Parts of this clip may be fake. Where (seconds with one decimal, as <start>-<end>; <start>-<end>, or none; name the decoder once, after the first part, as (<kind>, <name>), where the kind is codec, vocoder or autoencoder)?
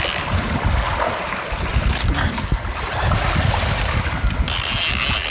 none